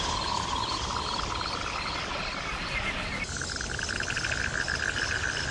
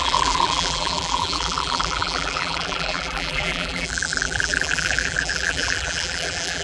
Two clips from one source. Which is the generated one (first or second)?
second